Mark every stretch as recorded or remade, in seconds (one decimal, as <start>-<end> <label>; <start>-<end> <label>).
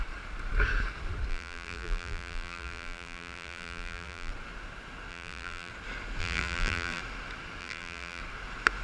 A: 0.0-1.3 recorded; 1.3-4.3 remade; 4.3-5.1 recorded; 5.1-5.7 remade; 5.7-6.2 recorded; 6.2-7.0 remade; 7.0-7.6 recorded; 7.6-8.2 remade; 8.2-8.8 recorded